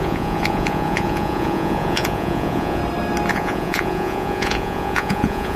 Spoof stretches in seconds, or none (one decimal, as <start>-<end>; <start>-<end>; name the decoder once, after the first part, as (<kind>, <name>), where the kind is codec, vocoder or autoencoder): 0.0-2.8 (vocoder, Vocos); 3.3-5.6